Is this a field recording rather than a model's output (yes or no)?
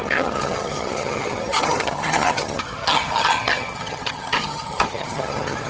no